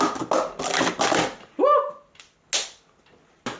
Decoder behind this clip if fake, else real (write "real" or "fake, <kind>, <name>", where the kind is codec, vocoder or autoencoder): real